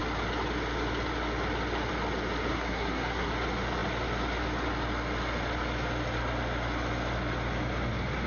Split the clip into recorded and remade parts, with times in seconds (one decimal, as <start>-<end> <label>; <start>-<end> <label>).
0.0-2.5 recorded; 2.5-3.3 remade; 3.3-8.3 recorded